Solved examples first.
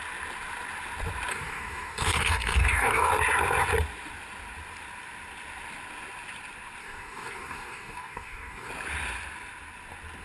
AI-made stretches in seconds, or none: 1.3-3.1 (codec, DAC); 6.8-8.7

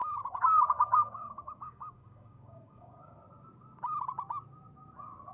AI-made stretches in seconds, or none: 0.0-3.2 (codec, DAC)

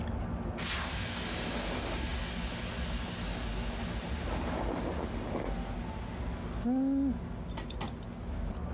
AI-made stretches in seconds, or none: none

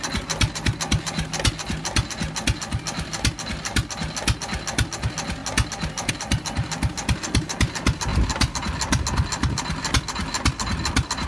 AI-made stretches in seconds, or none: none

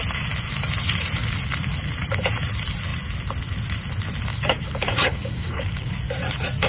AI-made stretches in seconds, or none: 4.3-5.9 (codec, DAC)

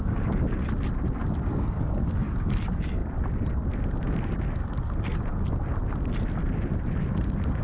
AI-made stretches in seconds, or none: 0.0-0.6 (codec, DAC); 1.5-3.0

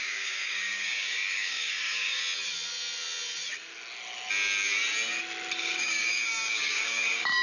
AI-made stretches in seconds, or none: 0.0-2.2 (codec, DAC); 5.6-7.4